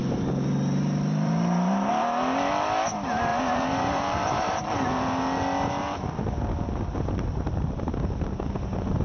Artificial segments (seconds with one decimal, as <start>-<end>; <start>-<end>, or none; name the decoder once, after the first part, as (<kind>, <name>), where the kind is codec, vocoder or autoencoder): 0.0-1.9 (vocoder, BigVGAN v2); 3.3-4.6